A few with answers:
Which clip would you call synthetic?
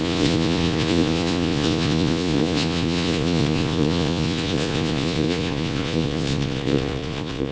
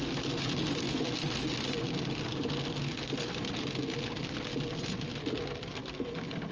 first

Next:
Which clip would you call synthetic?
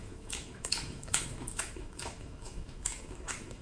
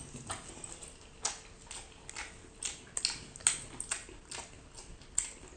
first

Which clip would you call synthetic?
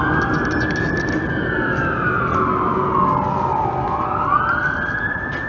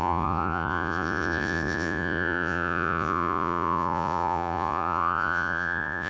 second